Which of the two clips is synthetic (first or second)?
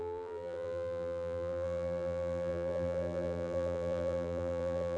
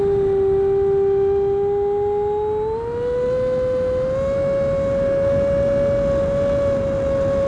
first